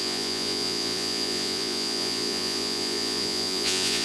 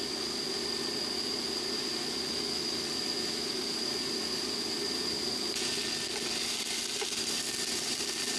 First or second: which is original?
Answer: second